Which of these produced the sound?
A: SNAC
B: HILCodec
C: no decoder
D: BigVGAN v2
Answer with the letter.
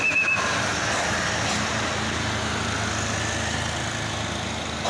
C